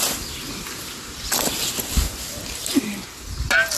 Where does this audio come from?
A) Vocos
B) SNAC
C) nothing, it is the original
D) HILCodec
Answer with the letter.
C